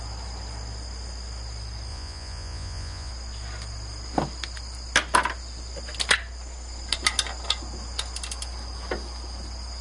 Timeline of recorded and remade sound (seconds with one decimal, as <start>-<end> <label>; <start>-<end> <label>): 0.0-1.9 recorded; 1.9-3.1 remade; 3.1-9.8 recorded